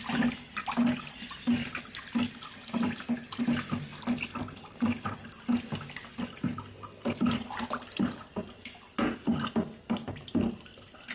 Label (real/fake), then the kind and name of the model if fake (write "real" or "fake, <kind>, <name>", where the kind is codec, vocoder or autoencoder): real